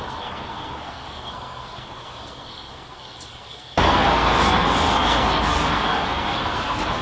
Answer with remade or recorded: remade